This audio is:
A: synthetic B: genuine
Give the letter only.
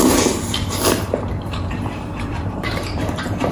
A